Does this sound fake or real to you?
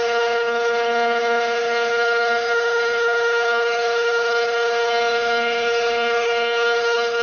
fake